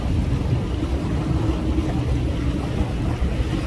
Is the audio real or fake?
real